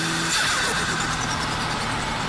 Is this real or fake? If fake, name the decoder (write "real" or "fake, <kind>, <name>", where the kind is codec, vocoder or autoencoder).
real